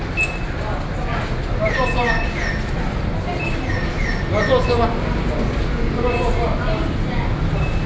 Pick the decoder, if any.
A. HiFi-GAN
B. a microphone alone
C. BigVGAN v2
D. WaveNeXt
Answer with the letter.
B